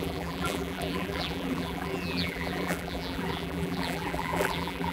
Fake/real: fake